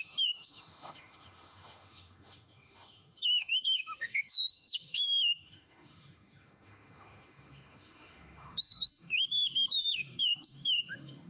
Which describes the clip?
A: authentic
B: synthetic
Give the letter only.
B